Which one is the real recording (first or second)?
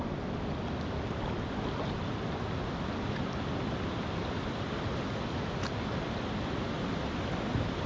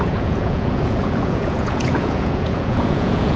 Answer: first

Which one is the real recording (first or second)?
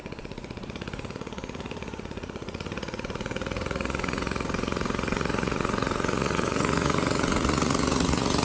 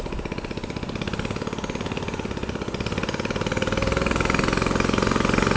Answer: second